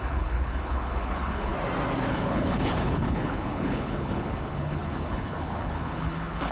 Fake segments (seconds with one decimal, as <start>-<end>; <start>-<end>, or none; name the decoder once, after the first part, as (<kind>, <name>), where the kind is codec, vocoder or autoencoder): 0.0-1.5 (codec, HILCodec); 2.1-6.5